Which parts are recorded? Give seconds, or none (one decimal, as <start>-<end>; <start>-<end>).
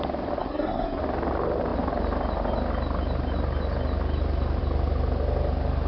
0.0-0.4; 1.0-5.9